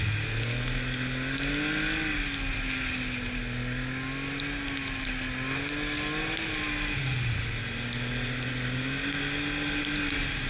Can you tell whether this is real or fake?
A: real